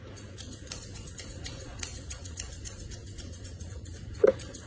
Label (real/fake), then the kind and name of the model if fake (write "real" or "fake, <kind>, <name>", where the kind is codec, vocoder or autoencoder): fake, vocoder, Vocos